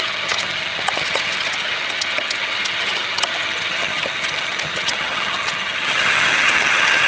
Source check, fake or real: fake